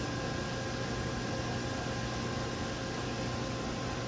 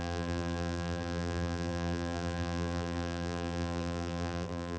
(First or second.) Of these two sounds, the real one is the first